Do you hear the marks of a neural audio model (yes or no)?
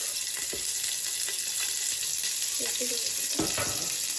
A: no